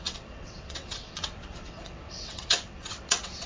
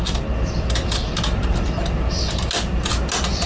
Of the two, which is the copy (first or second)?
first